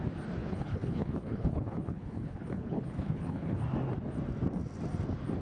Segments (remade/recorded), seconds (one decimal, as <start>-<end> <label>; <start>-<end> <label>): 0.0-0.4 recorded; 0.4-3.6 remade; 3.6-5.4 recorded